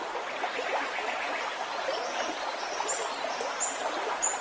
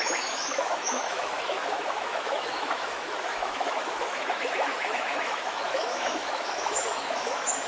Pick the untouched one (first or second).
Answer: first